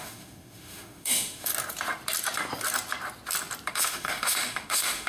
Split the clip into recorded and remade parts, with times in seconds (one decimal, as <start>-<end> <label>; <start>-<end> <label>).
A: 0.0-1.5 remade; 1.5-3.7 recorded; 3.7-5.1 remade